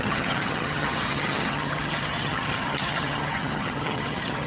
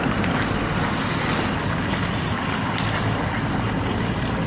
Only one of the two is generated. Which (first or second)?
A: first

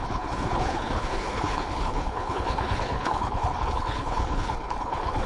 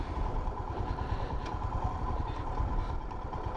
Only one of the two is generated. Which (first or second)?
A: first